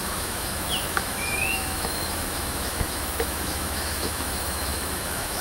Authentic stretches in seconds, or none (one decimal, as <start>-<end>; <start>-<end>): none